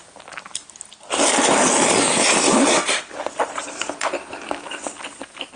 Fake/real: real